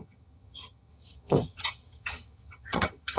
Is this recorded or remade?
remade